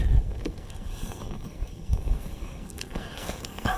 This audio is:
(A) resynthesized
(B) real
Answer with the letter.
A